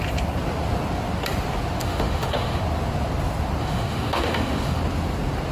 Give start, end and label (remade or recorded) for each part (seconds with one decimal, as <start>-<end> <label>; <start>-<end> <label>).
0.0-1.8 recorded; 1.8-2.6 remade; 2.6-3.6 recorded; 3.6-4.8 remade; 4.8-5.5 recorded